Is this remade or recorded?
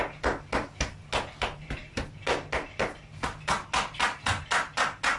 recorded